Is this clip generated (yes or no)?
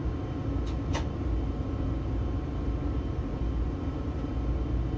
no